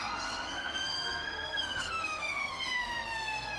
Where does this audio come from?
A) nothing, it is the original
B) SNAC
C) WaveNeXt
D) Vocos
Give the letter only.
B